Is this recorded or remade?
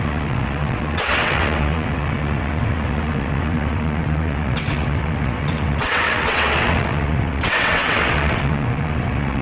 remade